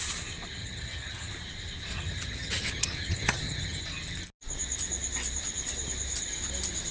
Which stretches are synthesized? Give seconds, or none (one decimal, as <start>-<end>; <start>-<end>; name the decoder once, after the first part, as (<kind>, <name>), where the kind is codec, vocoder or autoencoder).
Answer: 0.6-1.3 (vocoder, HiFi-GAN); 1.9-3.8